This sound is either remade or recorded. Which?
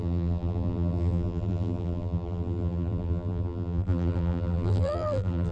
remade